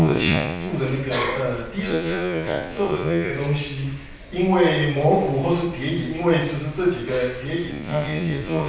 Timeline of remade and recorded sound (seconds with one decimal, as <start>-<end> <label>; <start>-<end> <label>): 0.0-0.7 remade; 0.7-1.8 recorded; 1.8-3.3 remade; 3.3-7.7 recorded; 7.7-8.7 remade